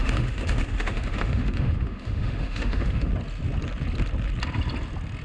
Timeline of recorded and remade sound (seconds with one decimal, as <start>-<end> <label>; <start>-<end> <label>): 0.0-3.1 remade; 3.1-5.2 recorded